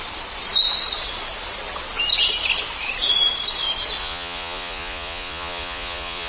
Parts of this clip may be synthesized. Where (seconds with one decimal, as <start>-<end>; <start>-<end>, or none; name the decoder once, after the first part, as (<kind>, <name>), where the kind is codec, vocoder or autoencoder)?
4.0-6.3 (vocoder, Vocos)